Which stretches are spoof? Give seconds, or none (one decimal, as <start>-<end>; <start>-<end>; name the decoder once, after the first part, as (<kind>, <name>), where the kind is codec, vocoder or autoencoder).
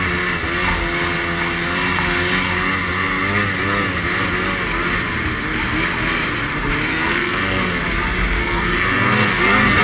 6.9-7.8 (codec, SNAC); 8.4-9.8